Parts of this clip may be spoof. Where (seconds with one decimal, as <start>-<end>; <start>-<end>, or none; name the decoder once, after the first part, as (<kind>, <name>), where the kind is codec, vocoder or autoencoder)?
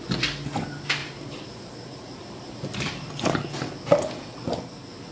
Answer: 1.0-3.1 (vocoder, BigVGAN v2)